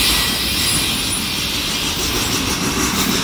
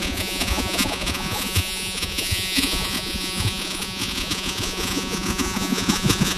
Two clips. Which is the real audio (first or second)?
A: first